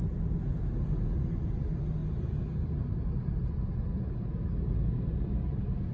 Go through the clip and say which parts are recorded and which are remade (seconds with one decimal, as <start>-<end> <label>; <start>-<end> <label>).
0.0-5.9 recorded